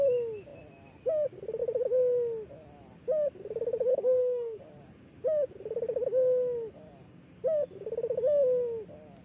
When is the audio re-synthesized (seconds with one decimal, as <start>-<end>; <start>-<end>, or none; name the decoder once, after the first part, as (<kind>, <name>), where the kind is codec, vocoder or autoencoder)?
3.9-4.6 (codec, DAC)